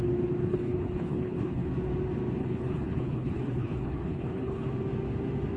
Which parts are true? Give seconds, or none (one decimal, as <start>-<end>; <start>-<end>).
0.0-0.4; 1.7-2.4; 4.7-5.6